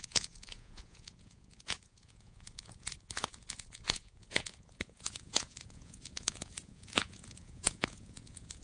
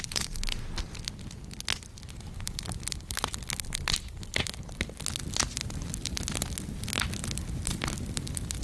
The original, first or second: second